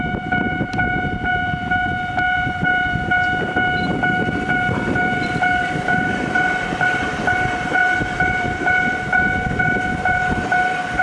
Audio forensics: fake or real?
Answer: fake